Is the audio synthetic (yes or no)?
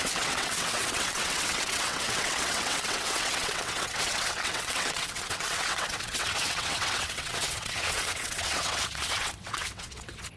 yes